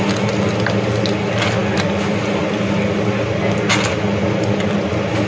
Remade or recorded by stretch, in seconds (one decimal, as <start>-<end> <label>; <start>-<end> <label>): 0.0-5.3 recorded